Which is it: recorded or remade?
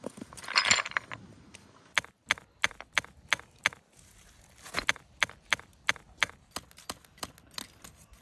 recorded